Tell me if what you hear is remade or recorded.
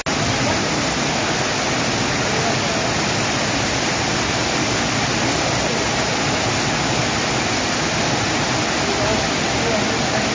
recorded